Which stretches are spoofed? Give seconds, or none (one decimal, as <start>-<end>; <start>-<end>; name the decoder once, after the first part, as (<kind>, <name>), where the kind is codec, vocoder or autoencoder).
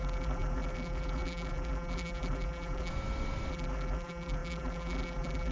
0.0-2.9 (vocoder, BigVGAN v2); 3.5-5.5